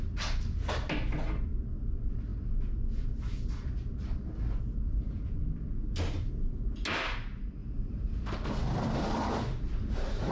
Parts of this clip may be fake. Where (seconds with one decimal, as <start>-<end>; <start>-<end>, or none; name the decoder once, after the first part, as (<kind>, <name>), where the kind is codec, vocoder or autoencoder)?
2.3-4.3 (vocoder, BigVGAN v2); 7.6-10.3